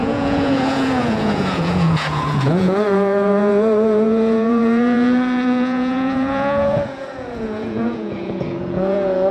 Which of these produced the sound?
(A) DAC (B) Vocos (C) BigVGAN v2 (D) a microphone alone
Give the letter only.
B